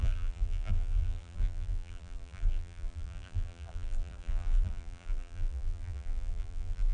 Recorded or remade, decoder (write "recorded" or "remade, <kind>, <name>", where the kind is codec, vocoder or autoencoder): remade, vocoder, BigVGAN v2